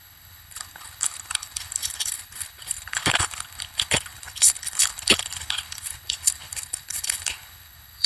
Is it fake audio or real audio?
fake